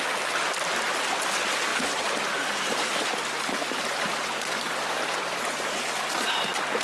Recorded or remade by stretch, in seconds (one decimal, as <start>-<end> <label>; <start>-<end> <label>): 0.0-6.8 recorded